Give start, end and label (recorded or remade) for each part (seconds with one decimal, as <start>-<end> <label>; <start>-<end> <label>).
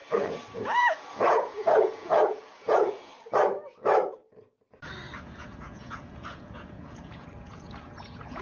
0.0-0.8 recorded; 0.8-3.1 remade; 3.1-5.2 recorded; 5.2-8.4 remade